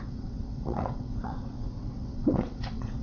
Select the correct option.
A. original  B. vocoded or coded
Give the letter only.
B